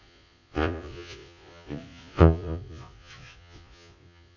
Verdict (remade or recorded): remade